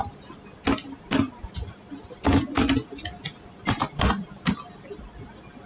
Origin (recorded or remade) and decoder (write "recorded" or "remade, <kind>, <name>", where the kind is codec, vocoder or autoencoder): recorded